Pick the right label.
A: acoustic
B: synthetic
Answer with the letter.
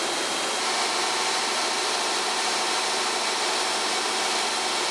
A